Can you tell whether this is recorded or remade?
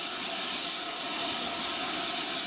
recorded